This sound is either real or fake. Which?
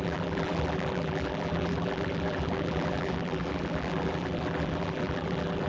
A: fake